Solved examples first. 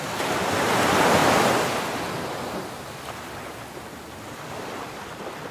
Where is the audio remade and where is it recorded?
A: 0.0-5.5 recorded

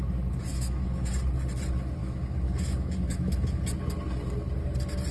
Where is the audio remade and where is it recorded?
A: 0.0-0.5 recorded; 0.5-1.1 remade; 1.1-2.0 recorded; 2.0-3.6 remade; 3.6-5.1 recorded

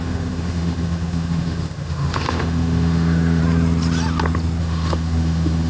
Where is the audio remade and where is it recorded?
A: 0.0-3.4 remade; 3.4-4.6 recorded; 4.6-5.7 remade